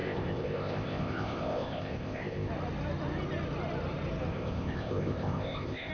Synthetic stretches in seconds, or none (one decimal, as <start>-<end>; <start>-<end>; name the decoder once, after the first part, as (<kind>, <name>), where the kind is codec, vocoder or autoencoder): 0.0-2.5 (codec, ZipCodec); 4.3-5.9